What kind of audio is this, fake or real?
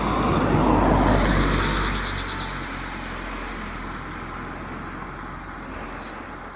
real